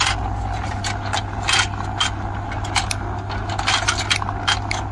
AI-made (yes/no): no